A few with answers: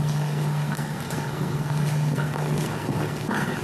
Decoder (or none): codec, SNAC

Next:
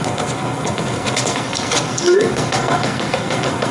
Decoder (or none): codec, SNAC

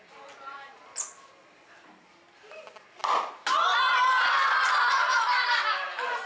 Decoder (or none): none